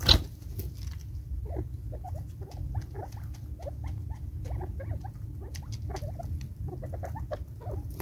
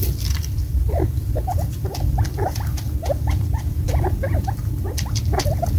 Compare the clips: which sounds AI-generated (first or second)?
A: second